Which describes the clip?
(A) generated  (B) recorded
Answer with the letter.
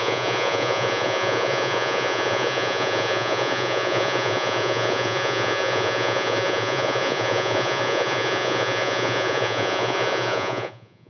A